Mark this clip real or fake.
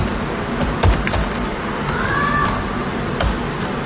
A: real